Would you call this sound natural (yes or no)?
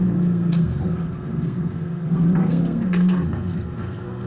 no